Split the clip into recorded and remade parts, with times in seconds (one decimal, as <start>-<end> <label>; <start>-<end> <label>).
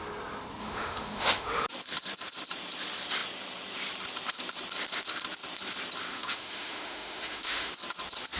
0.0-0.6 recorded; 0.6-1.7 remade; 1.7-6.1 recorded; 6.1-7.7 remade; 7.7-8.4 recorded